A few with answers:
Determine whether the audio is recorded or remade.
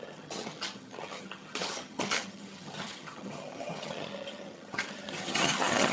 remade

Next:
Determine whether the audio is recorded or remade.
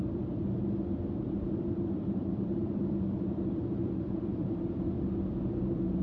remade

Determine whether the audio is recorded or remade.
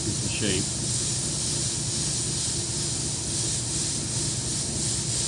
recorded